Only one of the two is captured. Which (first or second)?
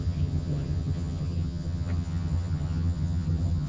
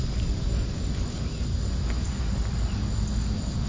second